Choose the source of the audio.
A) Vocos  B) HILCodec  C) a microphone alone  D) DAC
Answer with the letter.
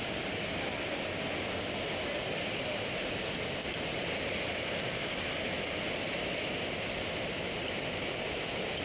C